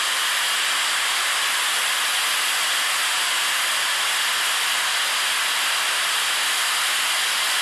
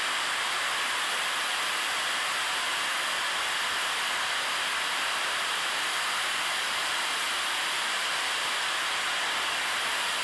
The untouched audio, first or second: first